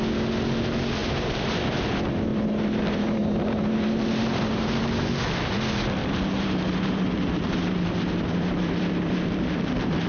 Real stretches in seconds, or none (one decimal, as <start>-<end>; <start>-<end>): 0.0-1.0; 1.8-2.3; 5.2-6.0

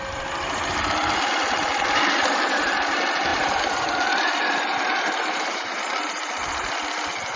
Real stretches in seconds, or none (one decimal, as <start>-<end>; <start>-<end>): 0.0-3.3; 5.8-7.4

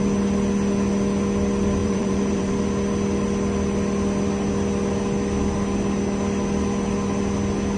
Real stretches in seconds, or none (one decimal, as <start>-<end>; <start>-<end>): 0.0-1.8; 2.5-7.8

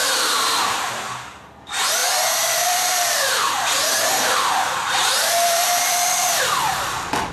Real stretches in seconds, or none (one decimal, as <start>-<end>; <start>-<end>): 0.9-2.0; 6.4-7.3

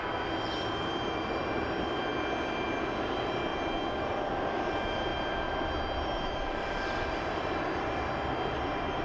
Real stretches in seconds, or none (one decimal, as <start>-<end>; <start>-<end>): 2.1-3.0; 3.5-4.0

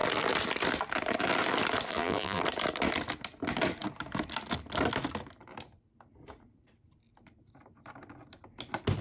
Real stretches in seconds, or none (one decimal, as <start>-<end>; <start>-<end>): 0.0-1.9; 2.4-9.0

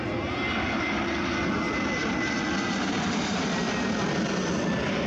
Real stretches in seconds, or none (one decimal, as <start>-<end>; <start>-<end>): 0.0-2.0; 3.6-5.1